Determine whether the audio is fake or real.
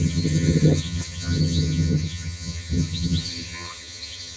fake